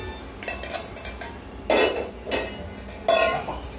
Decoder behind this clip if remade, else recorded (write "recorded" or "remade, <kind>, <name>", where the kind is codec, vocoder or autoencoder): recorded